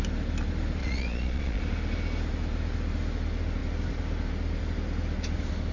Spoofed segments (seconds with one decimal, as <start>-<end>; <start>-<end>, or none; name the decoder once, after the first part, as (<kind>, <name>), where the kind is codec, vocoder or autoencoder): 0.8-1.6 (vocoder, Vocos)